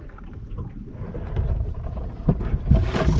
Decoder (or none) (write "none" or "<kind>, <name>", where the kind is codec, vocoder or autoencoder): none